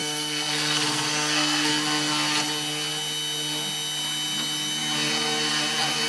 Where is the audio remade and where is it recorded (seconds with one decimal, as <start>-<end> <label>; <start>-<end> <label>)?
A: 0.0-1.7 remade; 1.7-6.1 recorded